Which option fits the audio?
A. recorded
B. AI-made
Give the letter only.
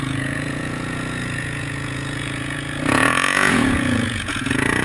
B